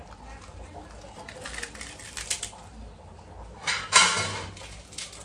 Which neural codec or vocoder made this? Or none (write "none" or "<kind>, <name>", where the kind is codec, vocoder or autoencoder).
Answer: none